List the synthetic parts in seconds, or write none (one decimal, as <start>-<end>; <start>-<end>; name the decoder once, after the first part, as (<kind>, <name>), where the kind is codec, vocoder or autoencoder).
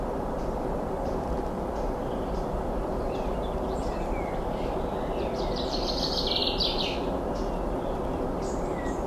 0.0-9.1 (vocoder, BigVGAN v2)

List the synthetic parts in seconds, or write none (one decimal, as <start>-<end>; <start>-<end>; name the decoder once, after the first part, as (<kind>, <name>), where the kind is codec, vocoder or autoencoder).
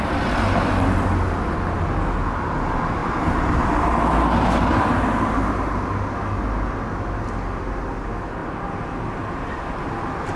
none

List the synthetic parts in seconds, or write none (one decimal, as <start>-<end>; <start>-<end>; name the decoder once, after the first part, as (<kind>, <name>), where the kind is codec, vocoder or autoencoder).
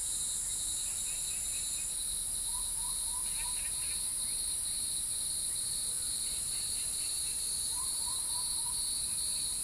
4.1-8.3 (vocoder, BigVGAN v2)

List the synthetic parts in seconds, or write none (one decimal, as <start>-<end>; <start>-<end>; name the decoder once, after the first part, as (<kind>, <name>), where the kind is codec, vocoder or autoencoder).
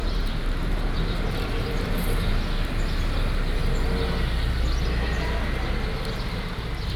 0.0-2.4 (vocoder, BigVGAN v2)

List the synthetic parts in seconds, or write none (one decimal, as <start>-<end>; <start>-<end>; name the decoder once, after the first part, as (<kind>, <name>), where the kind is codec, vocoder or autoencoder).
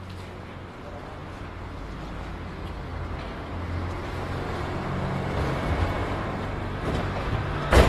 6.0-7.0 (vocoder, BigVGAN v2)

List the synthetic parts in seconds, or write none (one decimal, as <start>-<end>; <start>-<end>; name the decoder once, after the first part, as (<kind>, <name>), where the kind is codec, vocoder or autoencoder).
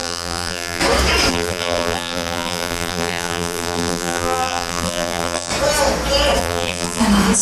0.0-0.8 (vocoder, BigVGAN v2); 1.3-5.5; 6.4-7.0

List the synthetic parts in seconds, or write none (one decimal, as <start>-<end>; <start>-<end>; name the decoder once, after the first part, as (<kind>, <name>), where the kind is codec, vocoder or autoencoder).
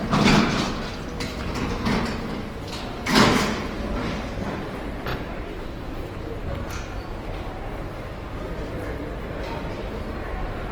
1.3-2.0 (vocoder, BigVGAN v2); 5.1-5.8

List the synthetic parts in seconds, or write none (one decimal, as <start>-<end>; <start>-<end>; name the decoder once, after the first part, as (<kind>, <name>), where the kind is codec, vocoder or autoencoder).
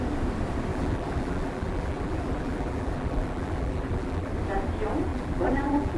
0.7-4.3 (vocoder, BigVGAN v2); 5.1-6.0